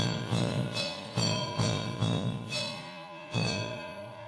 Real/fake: fake